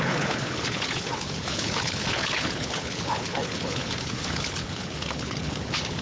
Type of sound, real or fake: fake